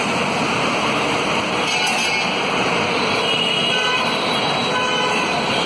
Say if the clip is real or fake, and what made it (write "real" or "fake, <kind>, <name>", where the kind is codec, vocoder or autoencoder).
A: real